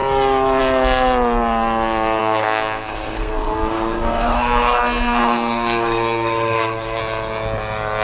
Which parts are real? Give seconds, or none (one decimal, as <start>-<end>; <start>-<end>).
0.0-2.2; 7.0-8.0